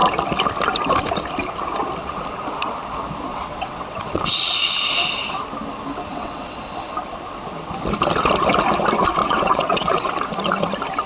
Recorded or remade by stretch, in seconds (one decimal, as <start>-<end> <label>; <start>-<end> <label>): 0.0-3.3 recorded; 3.3-4.5 remade; 4.5-6.1 recorded; 6.1-6.6 remade; 6.6-9.2 recorded; 9.2-10.1 remade; 10.1-11.1 recorded